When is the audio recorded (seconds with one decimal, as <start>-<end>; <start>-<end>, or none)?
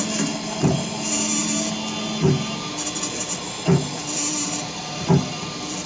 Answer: 0.0-5.9